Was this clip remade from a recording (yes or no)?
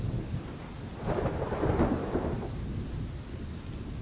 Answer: no